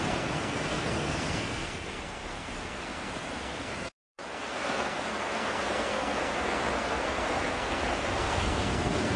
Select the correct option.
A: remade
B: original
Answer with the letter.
A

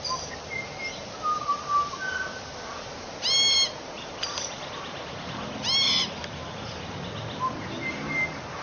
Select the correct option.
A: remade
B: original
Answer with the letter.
B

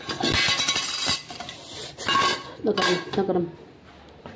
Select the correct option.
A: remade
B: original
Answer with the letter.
B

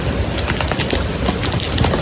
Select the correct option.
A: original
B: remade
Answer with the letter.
A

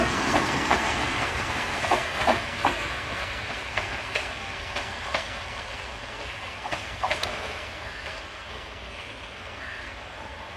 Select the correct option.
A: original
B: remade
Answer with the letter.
B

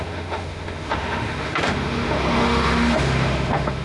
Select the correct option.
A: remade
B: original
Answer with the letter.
A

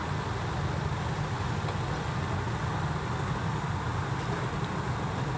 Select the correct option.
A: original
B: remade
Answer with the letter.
A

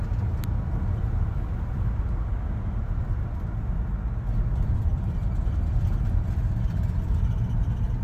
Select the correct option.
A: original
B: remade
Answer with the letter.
A